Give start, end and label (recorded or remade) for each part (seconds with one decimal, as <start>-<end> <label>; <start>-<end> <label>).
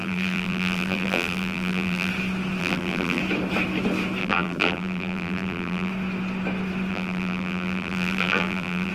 0.0-2.1 remade; 2.1-2.6 recorded; 2.6-3.2 remade; 3.2-4.2 recorded; 4.2-5.9 remade; 5.9-6.9 recorded; 6.9-8.9 remade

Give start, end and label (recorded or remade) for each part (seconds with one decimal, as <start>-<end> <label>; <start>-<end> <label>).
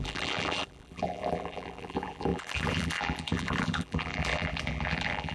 0.0-5.3 remade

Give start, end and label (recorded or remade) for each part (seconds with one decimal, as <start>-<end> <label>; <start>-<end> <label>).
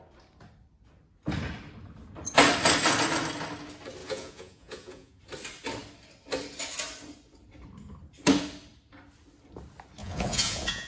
0.0-4.0 recorded; 4.0-5.2 remade; 5.2-10.0 recorded; 10.0-10.9 remade